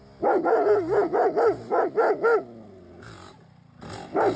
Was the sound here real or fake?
real